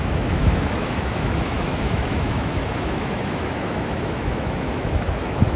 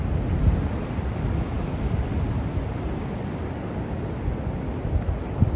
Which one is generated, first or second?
first